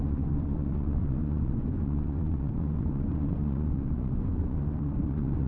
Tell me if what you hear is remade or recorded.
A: remade